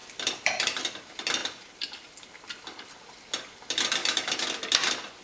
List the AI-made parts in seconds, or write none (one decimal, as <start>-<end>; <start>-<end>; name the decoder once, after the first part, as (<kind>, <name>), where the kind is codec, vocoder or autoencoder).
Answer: 0.0-0.8 (vocoder, BigVGAN v2); 1.4-3.2